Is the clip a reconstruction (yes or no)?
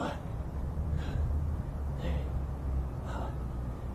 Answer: no